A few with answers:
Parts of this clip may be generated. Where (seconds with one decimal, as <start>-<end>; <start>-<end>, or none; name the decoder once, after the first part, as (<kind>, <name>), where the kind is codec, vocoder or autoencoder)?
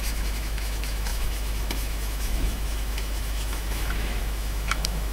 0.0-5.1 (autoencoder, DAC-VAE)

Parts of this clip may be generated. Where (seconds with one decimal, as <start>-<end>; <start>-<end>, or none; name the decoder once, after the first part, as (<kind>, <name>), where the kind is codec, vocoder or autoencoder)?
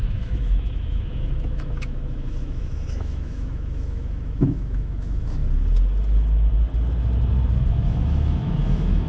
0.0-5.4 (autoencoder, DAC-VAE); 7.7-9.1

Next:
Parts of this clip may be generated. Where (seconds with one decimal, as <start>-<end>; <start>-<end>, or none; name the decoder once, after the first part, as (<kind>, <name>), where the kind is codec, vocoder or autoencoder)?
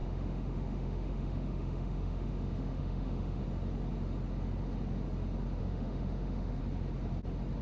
0.0-3.4 (autoencoder, DAC-VAE); 5.6-6.6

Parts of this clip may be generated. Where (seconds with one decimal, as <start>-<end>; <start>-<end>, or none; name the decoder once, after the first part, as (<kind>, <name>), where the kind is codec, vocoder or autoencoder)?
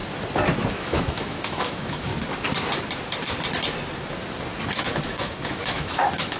0.7-2.1 (autoencoder, DAC-VAE); 4.8-6.4